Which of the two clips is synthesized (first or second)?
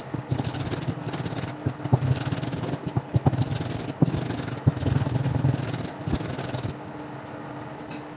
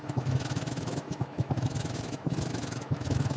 second